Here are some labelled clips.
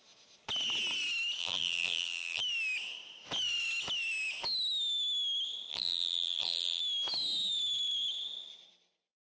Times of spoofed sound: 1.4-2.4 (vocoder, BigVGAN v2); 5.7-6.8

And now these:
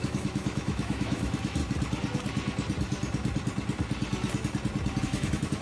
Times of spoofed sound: 0.0-1.6 (autoencoder, DAC-VAE); 5.0-5.6

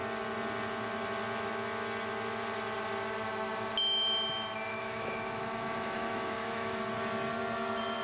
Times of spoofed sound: 4.7-6.8 (autoencoder, DAC-VAE)

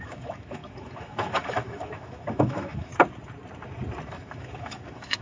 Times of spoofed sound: 0.0-2.9 (autoencoder, DAC-VAE); 4.1-5.2

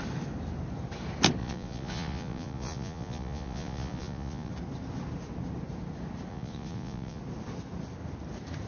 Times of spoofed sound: 1.4-4.5 (vocoder, Vocos); 6.3-7.2